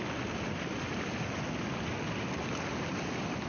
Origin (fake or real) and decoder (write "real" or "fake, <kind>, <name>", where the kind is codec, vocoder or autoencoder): real